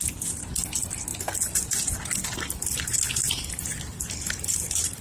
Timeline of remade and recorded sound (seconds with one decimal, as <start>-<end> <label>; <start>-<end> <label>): 0.0-5.0 recorded